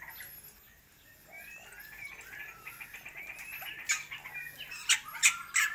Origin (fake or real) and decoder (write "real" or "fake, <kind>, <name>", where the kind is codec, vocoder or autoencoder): real